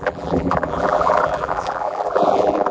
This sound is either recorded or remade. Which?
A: remade